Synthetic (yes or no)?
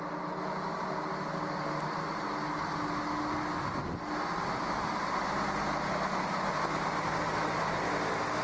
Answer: no